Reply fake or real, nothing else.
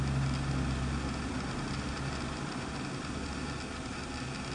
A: real